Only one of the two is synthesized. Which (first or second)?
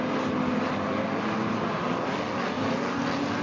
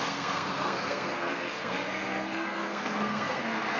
second